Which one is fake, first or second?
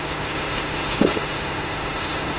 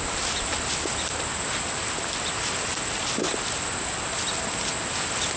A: first